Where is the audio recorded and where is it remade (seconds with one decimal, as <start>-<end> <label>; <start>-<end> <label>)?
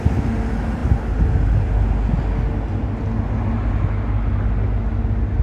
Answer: 0.0-5.4 recorded